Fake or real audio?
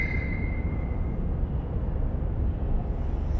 real